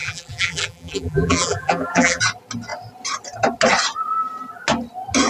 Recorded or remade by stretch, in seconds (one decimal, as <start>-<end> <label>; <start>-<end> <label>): 0.0-2.2 remade; 2.2-5.3 recorded